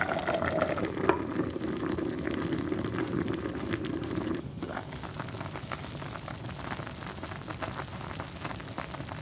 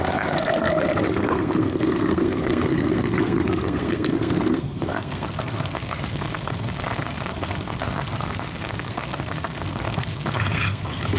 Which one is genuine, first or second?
first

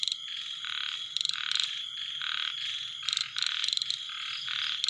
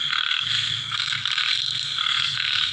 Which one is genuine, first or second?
first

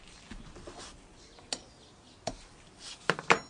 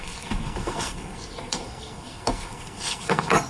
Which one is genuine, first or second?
first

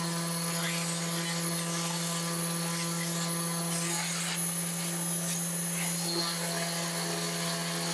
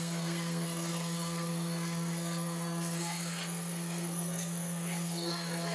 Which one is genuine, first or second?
first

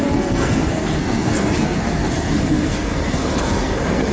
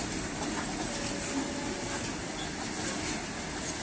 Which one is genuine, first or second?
second